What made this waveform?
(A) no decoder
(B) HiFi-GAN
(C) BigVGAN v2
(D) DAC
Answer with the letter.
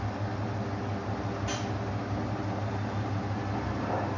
A